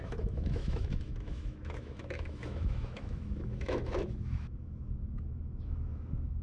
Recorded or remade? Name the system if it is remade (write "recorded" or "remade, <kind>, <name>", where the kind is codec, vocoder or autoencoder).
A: remade, autoencoder, DAC-VAE